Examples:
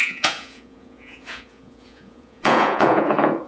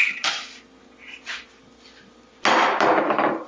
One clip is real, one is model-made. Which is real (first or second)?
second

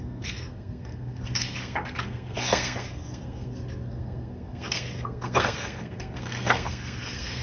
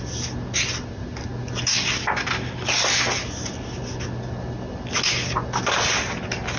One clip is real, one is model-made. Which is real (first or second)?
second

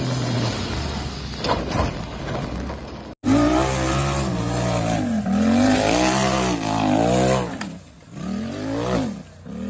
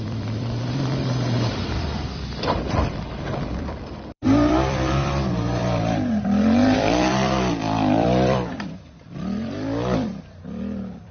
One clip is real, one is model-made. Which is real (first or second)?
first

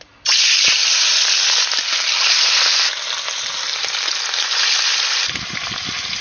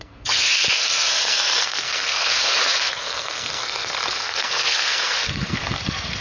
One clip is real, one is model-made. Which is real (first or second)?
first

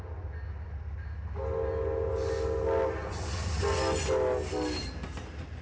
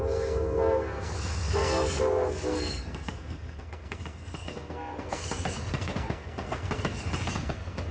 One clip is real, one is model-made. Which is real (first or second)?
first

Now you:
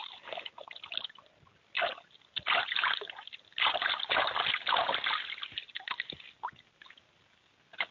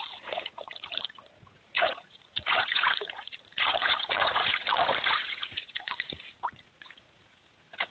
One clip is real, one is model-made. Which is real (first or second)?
first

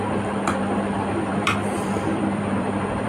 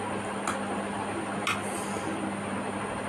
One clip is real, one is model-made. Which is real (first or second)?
second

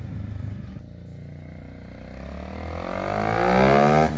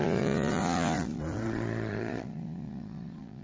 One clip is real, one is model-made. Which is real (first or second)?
first